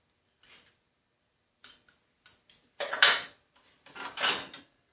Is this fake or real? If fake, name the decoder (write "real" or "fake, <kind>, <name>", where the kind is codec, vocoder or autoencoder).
real